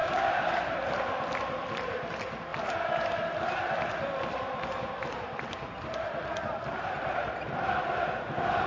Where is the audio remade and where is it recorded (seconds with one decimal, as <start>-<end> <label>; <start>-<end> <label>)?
0.0-0.6 remade; 0.6-8.7 recorded